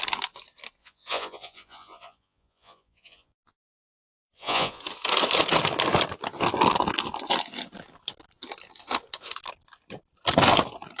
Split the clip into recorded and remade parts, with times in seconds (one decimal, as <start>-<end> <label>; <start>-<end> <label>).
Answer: 0.0-0.8 recorded; 0.8-4.8 remade; 4.8-11.0 recorded